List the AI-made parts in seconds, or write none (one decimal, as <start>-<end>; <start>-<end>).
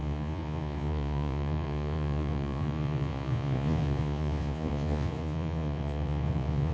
0.0-6.7